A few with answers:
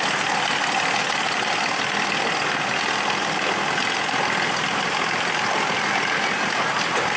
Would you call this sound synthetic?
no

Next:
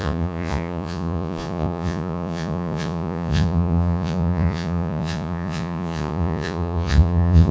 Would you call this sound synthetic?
yes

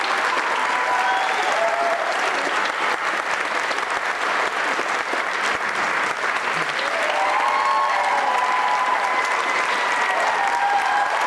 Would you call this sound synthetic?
no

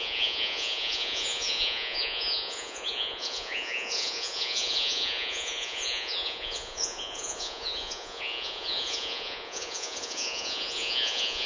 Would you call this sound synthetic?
yes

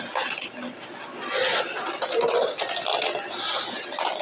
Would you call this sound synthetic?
no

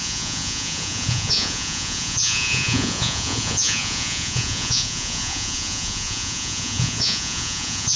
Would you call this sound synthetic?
yes